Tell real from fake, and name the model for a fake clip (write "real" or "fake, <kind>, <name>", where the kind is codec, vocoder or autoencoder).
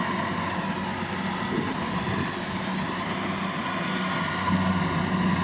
real